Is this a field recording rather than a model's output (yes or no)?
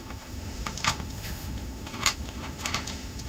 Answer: no